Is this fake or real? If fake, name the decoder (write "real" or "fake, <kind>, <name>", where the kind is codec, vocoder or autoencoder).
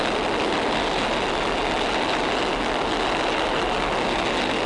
real